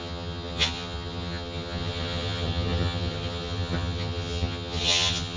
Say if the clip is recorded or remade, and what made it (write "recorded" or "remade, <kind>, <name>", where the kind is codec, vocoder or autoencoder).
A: remade, vocoder, HiFi-GAN